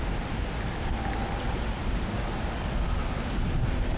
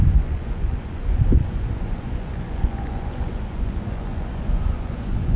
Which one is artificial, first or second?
second